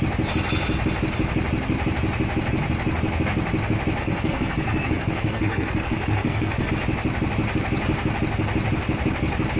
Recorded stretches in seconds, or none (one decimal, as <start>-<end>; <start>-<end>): 0.0-4.0; 6.7-9.6